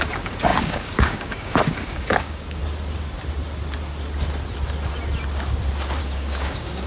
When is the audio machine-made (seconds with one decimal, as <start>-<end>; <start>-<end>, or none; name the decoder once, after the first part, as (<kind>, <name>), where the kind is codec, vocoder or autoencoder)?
0.0-2.6 (codec, DAC); 6.0-6.9